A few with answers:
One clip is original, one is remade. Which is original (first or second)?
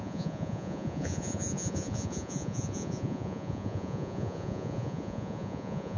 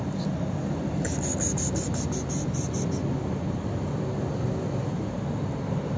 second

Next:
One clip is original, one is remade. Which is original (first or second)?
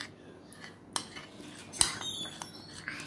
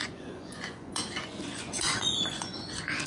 first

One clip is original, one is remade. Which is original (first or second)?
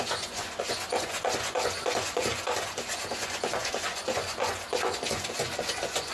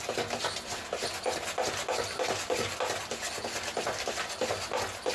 second